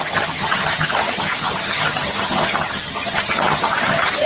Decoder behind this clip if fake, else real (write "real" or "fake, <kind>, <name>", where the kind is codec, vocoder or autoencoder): fake, vocoder, HiFi-GAN